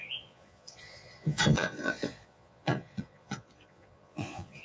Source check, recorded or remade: remade